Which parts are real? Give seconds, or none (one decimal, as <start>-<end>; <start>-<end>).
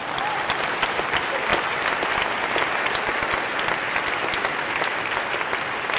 0.0-4.5; 5.0-6.0